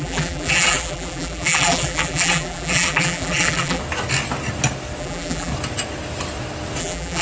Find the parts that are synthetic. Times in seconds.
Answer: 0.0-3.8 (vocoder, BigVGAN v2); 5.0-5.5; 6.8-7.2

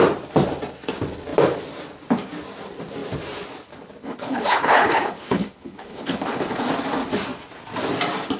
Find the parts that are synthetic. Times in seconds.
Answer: 4.0-6.7 (codec, HILCodec)